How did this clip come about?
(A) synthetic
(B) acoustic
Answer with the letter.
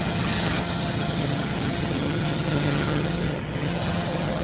A